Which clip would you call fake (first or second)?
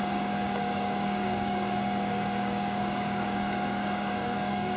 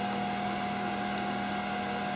first